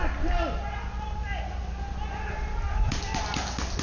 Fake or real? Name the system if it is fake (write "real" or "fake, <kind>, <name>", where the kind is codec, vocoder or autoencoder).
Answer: real